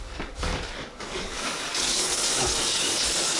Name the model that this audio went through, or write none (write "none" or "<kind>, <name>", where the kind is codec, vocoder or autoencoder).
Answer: codec, DAC